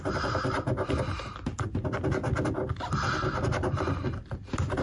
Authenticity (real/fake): real